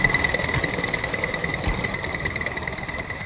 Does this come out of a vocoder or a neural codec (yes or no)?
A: no